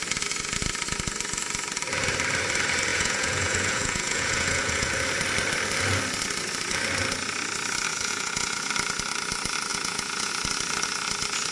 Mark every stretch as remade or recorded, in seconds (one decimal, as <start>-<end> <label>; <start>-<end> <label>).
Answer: 0.0-2.9 recorded; 2.9-4.9 remade; 4.9-7.9 recorded; 7.9-8.7 remade; 8.7-9.7 recorded; 9.7-10.3 remade; 10.3-11.5 recorded